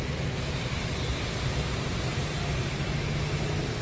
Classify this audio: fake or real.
real